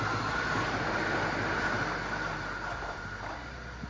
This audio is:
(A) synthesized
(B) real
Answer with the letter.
B